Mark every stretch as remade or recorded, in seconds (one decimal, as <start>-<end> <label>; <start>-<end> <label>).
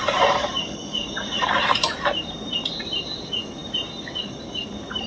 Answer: 0.0-5.1 remade